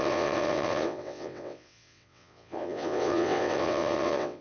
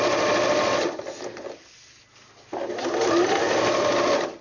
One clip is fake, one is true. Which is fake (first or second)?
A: first